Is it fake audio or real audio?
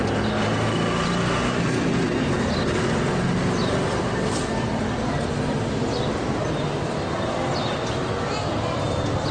real